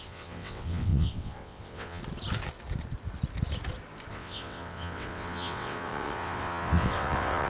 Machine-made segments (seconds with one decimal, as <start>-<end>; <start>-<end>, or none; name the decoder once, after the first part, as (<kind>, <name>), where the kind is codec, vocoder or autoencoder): 0.0-2.0 (vocoder, WaveNeXt); 4.1-7.5